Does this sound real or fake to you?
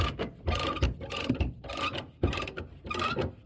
real